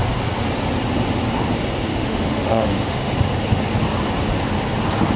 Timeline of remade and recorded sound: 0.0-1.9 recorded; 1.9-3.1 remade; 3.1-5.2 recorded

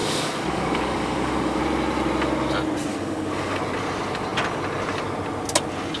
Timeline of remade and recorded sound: 0.0-1.6 remade; 1.6-2.9 recorded; 2.9-3.6 remade; 3.6-6.0 recorded

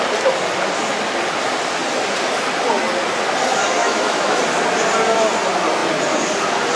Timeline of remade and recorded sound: 0.0-3.8 recorded; 3.8-4.4 remade; 4.4-6.8 recorded

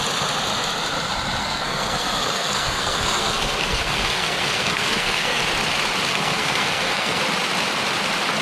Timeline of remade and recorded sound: 0.0-1.4 recorded; 1.4-5.4 remade; 5.4-6.1 recorded; 6.1-7.2 remade; 7.2-8.4 recorded

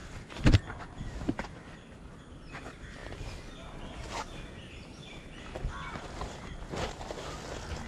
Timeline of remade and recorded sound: 0.0-7.9 recorded

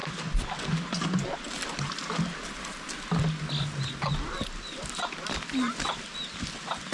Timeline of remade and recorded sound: 0.0-6.9 recorded